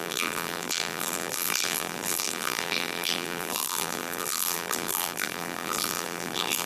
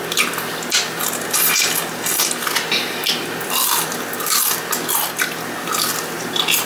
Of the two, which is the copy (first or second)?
first